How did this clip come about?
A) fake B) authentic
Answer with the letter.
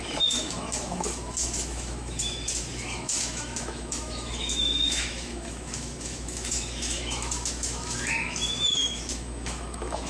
A